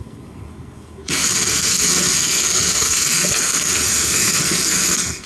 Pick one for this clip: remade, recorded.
remade